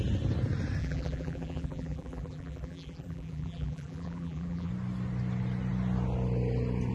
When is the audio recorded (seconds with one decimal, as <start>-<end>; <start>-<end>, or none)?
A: 0.0-0.8; 4.7-6.9